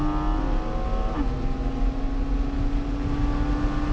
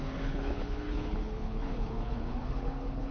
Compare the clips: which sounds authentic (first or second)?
first